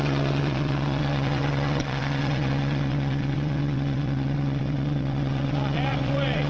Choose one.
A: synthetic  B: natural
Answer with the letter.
A